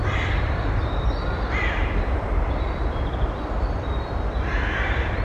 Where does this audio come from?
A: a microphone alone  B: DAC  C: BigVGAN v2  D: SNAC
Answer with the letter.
C